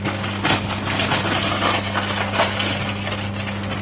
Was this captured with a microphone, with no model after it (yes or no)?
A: yes